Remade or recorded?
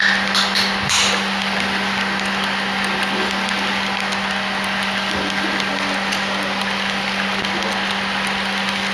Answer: recorded